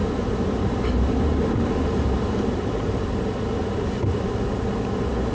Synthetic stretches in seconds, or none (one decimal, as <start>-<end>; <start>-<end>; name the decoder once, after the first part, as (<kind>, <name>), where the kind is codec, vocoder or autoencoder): 0.0-3.2 (vocoder, BigVGAN v2)